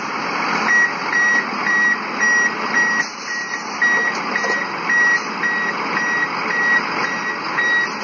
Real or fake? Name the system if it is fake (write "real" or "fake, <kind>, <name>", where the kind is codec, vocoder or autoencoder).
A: real